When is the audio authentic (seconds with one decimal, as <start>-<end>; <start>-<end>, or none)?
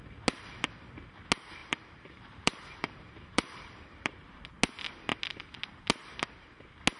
0.0-1.6; 4.4-7.0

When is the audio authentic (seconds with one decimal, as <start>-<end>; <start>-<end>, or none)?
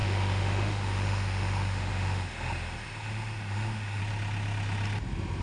4.0-5.4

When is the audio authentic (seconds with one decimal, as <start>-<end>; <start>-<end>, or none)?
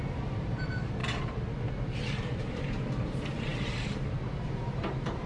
1.0-2.2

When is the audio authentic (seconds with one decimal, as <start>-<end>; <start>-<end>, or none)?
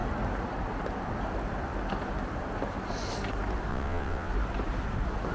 0.0-3.7; 4.3-5.3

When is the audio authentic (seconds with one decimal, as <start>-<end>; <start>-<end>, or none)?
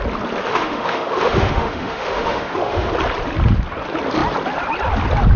0.0-0.5; 2.9-5.4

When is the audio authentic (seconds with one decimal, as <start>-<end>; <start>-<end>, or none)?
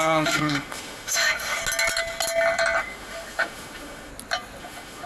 1.6-2.8; 4.1-4.6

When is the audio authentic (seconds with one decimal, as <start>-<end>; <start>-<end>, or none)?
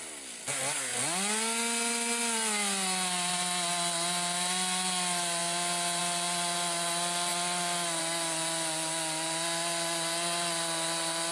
0.0-11.3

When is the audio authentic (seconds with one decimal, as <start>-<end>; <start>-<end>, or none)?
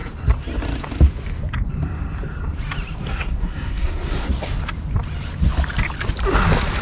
0.0-3.0; 4.3-6.8